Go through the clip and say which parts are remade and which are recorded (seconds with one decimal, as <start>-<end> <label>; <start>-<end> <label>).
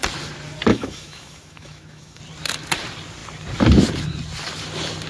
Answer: 0.0-0.7 recorded; 0.7-2.2 remade; 2.2-5.1 recorded